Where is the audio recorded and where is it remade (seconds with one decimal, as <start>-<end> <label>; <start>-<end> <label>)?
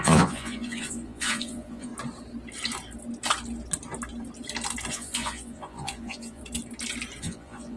0.0-1.9 remade; 1.9-4.9 recorded; 4.9-6.4 remade; 6.4-7.2 recorded; 7.2-7.8 remade